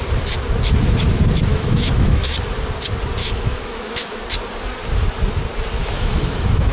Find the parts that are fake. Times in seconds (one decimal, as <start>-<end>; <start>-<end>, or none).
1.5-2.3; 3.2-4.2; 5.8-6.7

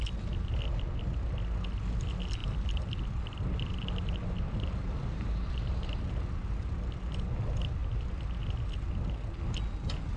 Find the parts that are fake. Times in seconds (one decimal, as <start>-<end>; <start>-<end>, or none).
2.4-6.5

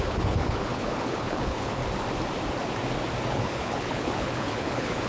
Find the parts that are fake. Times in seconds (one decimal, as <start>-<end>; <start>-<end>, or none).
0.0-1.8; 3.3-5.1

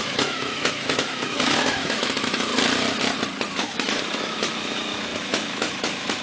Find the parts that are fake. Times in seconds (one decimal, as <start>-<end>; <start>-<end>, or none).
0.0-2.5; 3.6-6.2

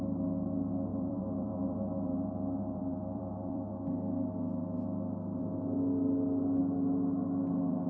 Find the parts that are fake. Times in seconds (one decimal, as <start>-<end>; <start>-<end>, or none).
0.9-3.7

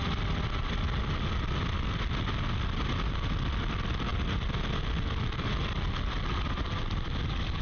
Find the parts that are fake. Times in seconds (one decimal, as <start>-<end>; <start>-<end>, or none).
none

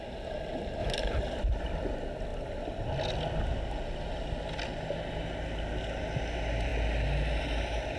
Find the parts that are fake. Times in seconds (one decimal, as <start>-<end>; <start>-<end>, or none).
none